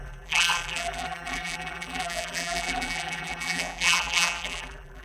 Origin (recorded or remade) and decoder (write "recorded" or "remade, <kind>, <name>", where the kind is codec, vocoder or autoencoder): remade, vocoder, BigVGAN v2